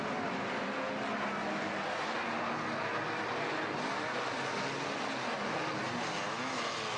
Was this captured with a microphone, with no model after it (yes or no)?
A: yes